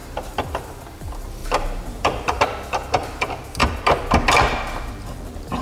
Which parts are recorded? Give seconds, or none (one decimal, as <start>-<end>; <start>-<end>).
0.7-1.4; 2.4-5.6